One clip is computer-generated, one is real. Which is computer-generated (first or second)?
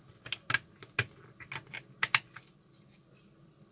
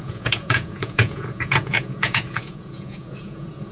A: second